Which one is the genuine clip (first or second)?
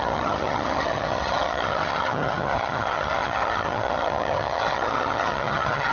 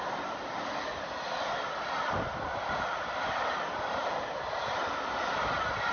second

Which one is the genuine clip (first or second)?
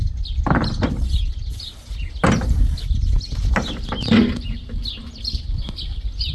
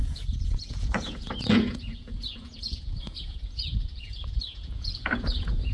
first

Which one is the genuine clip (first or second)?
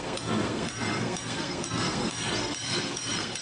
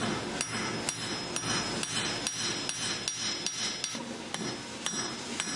second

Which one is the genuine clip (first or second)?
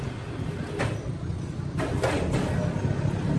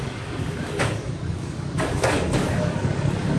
first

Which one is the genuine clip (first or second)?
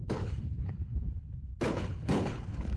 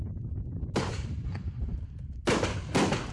second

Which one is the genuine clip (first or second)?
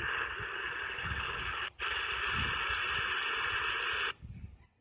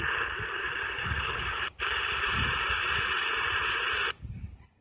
first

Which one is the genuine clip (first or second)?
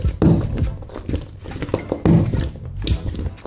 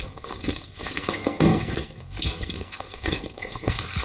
first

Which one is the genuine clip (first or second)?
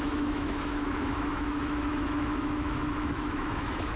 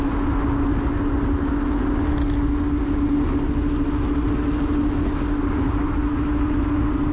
second